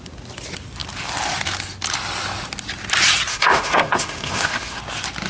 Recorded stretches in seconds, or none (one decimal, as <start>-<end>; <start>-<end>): 0.0-3.3; 4.8-5.3